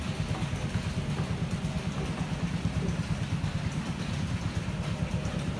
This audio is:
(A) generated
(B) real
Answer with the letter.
B